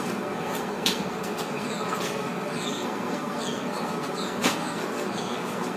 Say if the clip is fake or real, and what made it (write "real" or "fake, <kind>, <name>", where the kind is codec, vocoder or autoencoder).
fake, codec, SNAC